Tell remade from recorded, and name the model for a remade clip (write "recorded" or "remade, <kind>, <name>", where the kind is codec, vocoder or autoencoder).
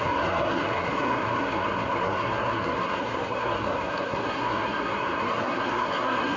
remade, codec, SNAC